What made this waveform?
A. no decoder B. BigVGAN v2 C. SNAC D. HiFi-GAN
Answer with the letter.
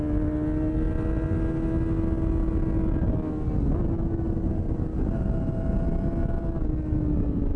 A